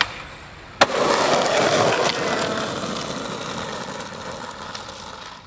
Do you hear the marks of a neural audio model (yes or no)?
no